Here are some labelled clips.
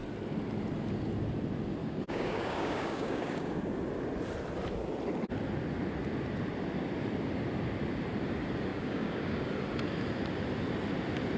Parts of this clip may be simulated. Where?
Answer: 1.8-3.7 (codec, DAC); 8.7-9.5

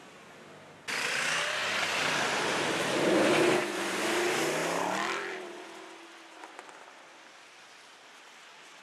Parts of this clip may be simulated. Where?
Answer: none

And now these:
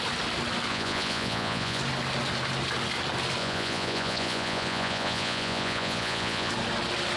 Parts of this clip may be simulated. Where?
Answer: 0.7-1.8 (vocoder, Vocos); 3.4-6.5

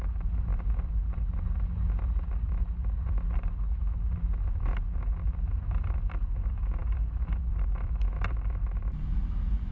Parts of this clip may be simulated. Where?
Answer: none

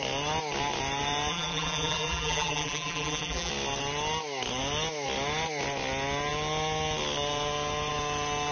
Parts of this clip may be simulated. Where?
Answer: 1.3-3.5 (vocoder, BigVGAN v2)

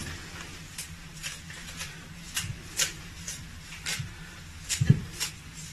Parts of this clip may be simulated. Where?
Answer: 3.4-5.7 (vocoder, BigVGAN v2)

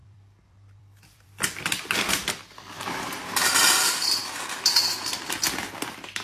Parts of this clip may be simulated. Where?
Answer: 0.0-3.3 (vocoder, BigVGAN v2)